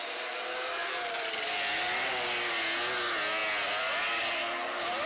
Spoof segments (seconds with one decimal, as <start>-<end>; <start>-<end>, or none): none